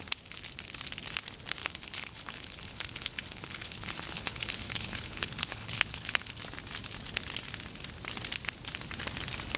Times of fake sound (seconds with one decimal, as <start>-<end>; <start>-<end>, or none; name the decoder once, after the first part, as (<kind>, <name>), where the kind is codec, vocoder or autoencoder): 1.6-6.3 (codec, HILCodec)